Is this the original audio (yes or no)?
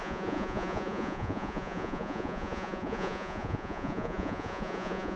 no